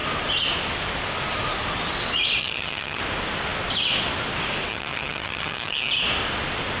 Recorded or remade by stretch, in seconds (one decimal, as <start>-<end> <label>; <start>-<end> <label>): 0.0-2.4 recorded; 2.4-3.0 remade; 3.0-4.7 recorded; 4.7-5.9 remade; 5.9-6.8 recorded